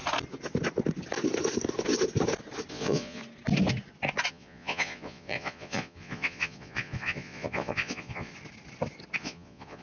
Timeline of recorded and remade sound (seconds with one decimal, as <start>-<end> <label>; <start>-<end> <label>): 0.0-2.7 recorded; 2.7-3.2 remade; 3.2-4.3 recorded; 4.3-8.3 remade; 8.3-9.2 recorded; 9.2-9.8 remade